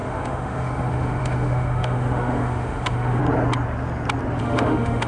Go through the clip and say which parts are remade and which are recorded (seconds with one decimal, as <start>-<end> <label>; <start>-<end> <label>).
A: 0.0-3.2 remade; 3.2-4.4 recorded; 4.4-5.1 remade